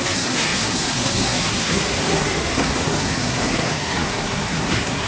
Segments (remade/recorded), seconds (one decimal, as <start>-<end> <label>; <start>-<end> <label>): 0.0-5.1 remade